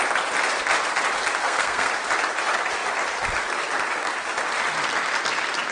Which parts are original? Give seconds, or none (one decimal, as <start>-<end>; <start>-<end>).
0.0-1.4; 1.9-5.7